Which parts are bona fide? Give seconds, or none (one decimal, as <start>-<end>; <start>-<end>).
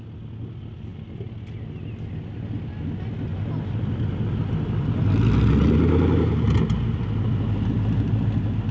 0.0-8.7